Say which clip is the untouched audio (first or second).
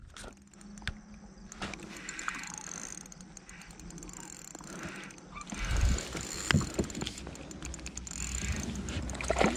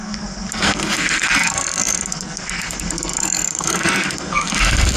first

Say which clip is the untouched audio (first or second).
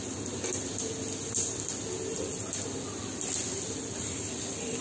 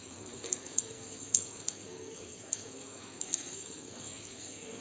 first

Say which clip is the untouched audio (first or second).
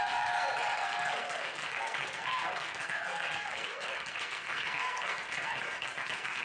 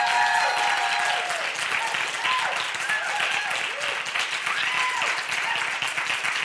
second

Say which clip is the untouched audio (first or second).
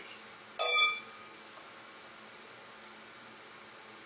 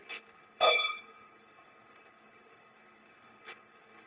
first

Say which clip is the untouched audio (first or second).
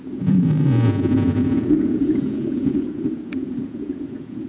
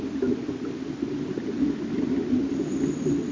second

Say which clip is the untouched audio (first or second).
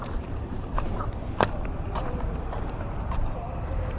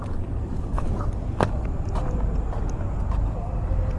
second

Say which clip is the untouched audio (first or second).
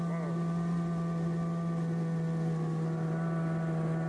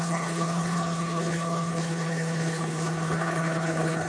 first